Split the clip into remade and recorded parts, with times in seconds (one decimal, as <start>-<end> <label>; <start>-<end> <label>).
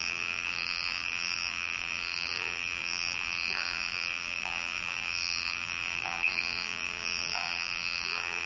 0.0-8.5 remade